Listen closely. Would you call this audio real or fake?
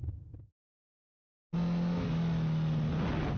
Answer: real